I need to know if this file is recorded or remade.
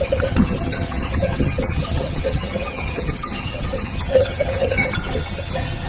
remade